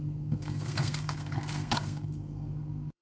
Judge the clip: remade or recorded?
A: remade